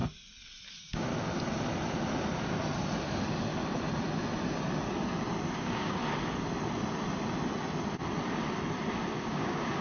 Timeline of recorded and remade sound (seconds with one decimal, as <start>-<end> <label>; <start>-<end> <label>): 0.0-0.7 recorded; 0.7-1.1 remade; 1.1-5.6 recorded; 5.6-6.0 remade; 6.0-9.2 recorded; 9.2-9.8 remade